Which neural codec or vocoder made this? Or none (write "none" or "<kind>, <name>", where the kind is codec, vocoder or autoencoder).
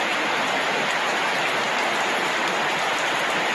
none